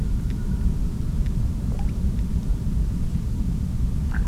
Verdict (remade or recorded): remade